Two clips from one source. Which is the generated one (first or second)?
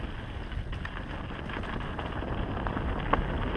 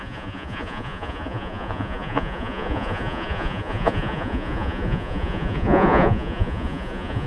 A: second